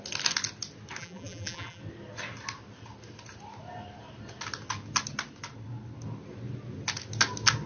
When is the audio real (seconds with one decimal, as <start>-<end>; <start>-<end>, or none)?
0.0-1.0; 1.8-7.7